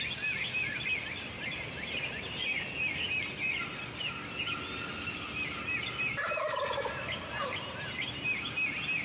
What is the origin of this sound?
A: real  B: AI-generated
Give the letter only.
A